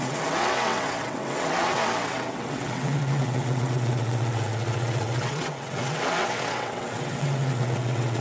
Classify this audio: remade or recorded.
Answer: remade